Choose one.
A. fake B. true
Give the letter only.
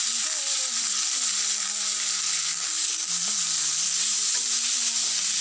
B